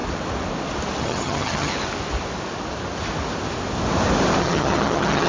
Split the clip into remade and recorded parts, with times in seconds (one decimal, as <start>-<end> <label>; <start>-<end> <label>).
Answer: 0.0-1.0 recorded; 1.0-1.7 remade; 1.7-4.4 recorded; 4.4-5.3 remade